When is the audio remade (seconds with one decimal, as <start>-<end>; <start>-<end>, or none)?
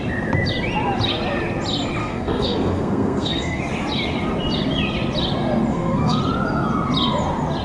2.0-3.6; 5.7-6.2